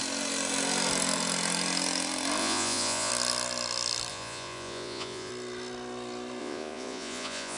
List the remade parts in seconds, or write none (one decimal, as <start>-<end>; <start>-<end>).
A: 2.4-3.1; 4.1-5.3; 6.4-7.6